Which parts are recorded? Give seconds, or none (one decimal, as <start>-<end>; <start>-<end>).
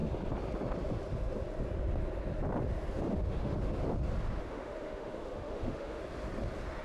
0.0-3.1; 3.8-4.4; 6.0-6.8